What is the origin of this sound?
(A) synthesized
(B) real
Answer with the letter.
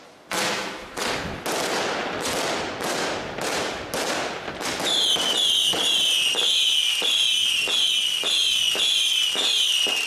B